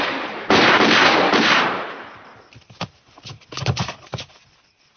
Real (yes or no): yes